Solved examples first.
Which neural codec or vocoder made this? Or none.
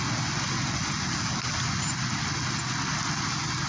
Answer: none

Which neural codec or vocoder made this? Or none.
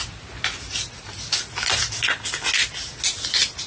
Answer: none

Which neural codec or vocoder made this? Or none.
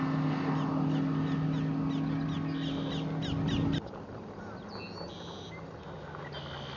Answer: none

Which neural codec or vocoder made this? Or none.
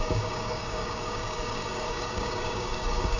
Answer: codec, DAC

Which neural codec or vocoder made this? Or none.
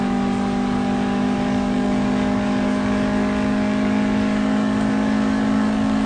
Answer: codec, DAC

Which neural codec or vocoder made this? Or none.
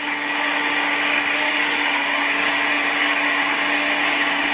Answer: codec, DAC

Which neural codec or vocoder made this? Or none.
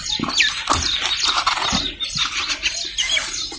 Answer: none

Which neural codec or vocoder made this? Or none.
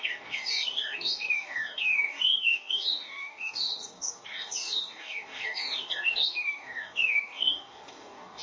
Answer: codec, DAC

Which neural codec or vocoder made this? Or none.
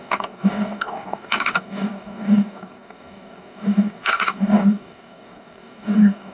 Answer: codec, DAC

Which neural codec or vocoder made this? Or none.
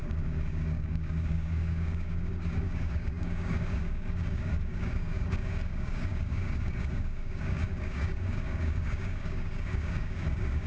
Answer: codec, DAC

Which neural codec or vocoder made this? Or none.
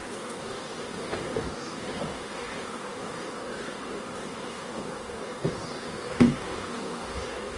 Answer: codec, DAC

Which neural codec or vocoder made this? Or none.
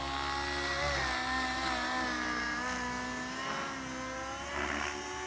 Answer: none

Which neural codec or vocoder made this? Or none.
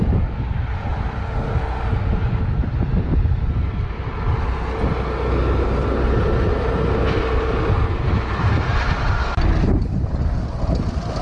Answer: none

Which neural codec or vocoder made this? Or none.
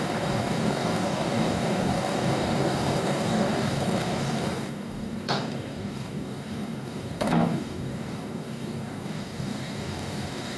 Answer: codec, DAC